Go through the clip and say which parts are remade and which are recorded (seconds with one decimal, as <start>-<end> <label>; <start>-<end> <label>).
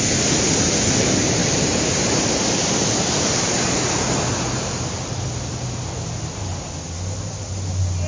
0.0-1.4 recorded; 1.4-5.4 remade; 5.4-8.1 recorded